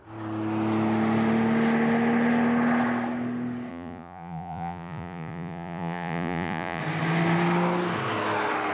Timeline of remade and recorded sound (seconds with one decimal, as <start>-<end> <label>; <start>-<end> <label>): 0.0-3.7 recorded; 3.7-6.8 remade; 6.8-8.7 recorded